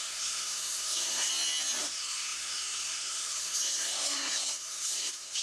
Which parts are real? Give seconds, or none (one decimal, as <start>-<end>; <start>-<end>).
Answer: 1.3-1.8

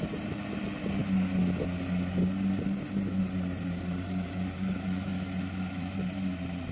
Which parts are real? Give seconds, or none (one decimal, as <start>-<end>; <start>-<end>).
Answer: 1.0-3.2; 5.1-5.8

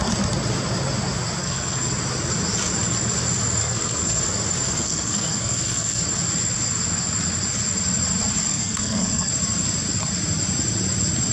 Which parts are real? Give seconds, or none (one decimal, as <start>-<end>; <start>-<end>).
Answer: 0.0-1.4; 1.9-3.6; 4.2-4.7; 6.0-8.5; 9.3-11.3

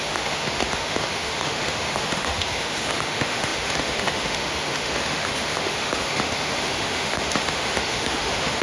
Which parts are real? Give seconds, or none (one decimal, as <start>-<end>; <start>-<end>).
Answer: none

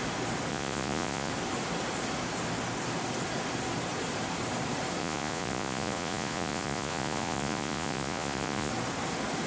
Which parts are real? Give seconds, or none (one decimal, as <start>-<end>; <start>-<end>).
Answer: 0.0-0.5; 1.3-5.0; 8.7-9.5

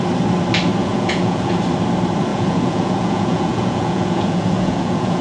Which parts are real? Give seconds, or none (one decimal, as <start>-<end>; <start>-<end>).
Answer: 0.0-0.8; 1.6-2.3

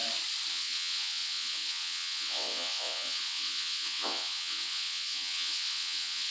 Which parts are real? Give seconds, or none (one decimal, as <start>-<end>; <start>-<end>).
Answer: 0.0-0.5

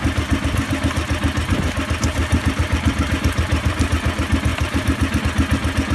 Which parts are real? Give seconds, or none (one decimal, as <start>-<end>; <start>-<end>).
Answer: 0.0-2.2; 3.9-4.5; 5.2-5.9